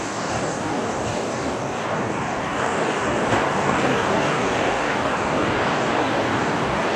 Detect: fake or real fake